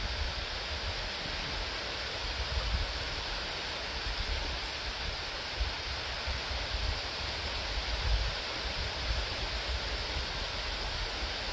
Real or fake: real